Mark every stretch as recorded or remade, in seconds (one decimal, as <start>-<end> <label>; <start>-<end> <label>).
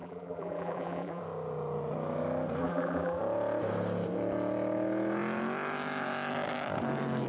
0.0-1.2 remade; 1.2-2.6 recorded; 2.6-3.2 remade; 3.2-7.3 recorded